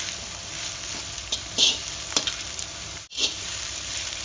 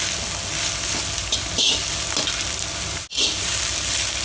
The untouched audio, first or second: second